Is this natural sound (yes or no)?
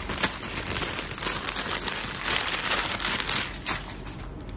yes